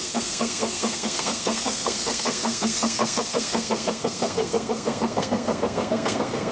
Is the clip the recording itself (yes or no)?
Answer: no